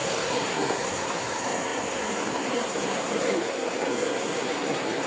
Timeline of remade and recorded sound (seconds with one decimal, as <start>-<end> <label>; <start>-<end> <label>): 0.0-5.1 remade